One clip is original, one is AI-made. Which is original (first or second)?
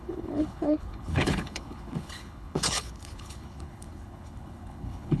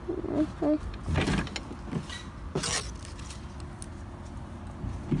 second